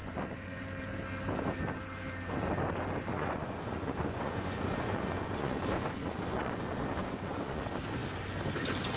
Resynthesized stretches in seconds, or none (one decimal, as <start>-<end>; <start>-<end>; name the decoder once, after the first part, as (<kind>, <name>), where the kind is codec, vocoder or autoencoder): 0.0-0.6 (vocoder, Vocos); 3.1-6.6; 7.0-7.6